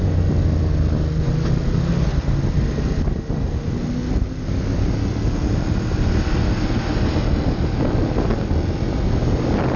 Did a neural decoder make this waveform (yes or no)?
no